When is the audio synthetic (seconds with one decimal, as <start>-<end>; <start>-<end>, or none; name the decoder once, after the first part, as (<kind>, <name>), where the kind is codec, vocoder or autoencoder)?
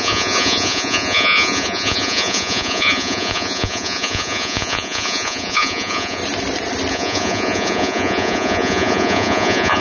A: 0.0-6.2 (vocoder, Vocos); 6.9-9.8